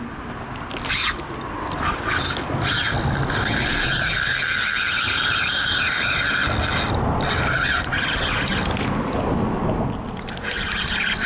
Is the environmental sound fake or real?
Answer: real